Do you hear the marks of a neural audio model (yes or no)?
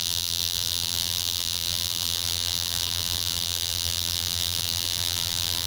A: yes